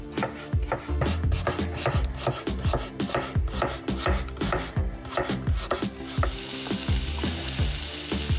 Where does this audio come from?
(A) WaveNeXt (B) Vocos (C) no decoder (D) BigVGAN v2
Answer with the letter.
C